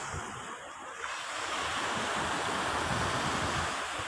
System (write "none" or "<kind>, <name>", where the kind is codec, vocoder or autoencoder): none